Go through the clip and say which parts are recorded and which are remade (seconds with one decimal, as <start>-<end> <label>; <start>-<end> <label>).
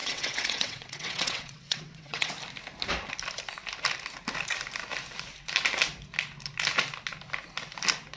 0.0-2.3 remade; 2.3-8.2 recorded